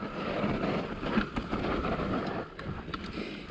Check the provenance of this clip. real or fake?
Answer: real